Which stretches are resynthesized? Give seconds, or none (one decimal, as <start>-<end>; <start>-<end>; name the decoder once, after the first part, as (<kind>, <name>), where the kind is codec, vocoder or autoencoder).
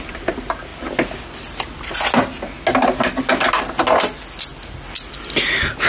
none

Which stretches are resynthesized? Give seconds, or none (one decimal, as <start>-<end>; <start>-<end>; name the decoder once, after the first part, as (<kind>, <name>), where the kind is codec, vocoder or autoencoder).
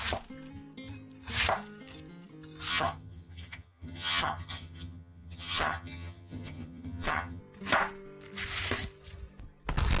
2.7-7.4 (vocoder, HiFi-GAN)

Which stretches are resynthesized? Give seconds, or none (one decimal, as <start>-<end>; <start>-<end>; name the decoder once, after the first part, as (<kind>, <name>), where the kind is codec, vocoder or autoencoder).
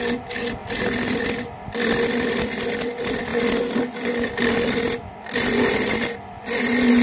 none